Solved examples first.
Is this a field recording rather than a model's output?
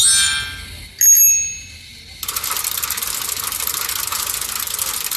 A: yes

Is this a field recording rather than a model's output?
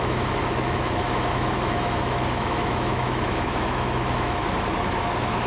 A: no